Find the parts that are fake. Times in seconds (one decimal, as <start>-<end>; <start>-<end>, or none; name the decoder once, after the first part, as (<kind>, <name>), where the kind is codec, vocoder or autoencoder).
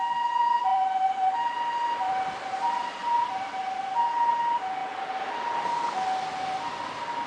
0.7-2.2 (vocoder, BigVGAN v2)